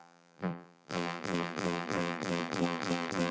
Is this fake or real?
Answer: fake